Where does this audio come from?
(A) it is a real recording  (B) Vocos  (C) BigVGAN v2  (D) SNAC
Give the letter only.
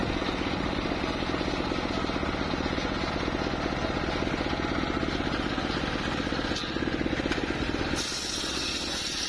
A